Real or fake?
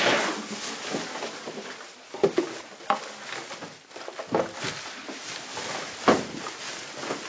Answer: real